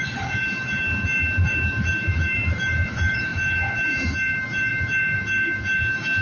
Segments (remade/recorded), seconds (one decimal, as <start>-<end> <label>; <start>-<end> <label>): 0.0-6.2 remade